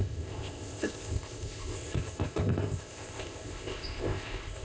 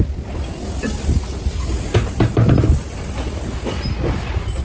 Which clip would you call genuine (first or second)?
second